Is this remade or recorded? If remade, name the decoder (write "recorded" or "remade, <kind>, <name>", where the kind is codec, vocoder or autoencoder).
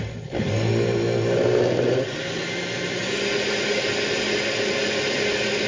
recorded